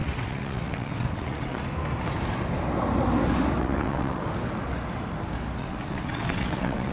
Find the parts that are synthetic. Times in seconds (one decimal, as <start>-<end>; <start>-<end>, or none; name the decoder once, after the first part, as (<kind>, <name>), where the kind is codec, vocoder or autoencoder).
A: 0.0-1.6 (vocoder, WaveNeXt); 3.6-4.2; 5.6-6.9